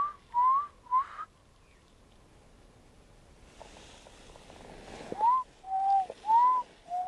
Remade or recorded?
recorded